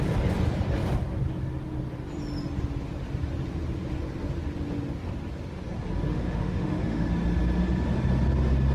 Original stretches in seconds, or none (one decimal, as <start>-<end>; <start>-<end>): 0.0-6.1; 7.1-8.7